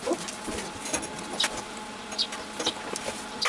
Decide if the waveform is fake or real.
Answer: real